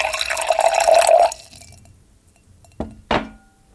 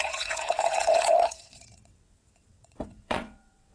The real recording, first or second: first